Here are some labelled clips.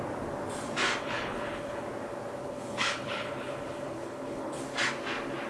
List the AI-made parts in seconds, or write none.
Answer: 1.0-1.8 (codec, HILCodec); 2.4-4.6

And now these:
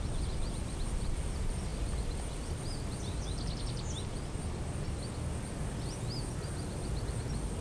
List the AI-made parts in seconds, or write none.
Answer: none

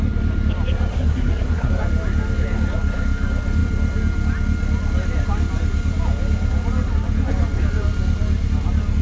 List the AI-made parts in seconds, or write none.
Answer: 0.9-1.7 (codec, SNAC)

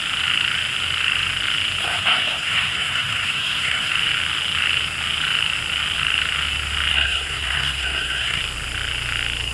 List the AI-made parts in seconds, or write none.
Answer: 1.8-3.9 (codec, SNAC); 6.9-8.4